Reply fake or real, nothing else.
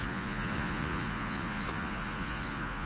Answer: fake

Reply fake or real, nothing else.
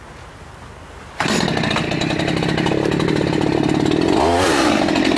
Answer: real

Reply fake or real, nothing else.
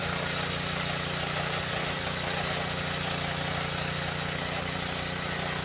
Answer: real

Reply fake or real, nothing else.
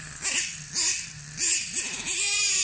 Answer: real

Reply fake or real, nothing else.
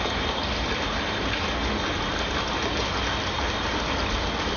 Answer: real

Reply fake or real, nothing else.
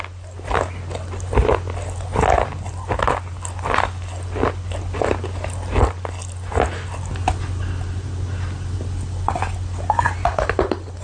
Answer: real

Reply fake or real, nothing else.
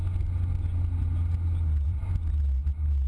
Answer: real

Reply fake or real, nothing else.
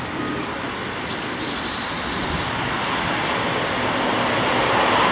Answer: real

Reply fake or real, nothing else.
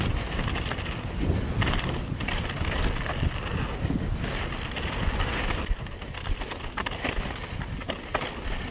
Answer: real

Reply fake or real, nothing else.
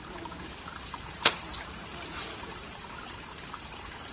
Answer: fake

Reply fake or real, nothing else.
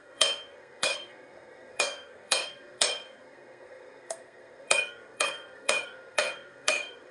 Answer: fake